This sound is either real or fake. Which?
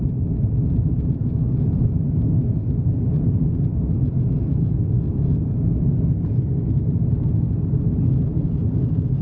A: real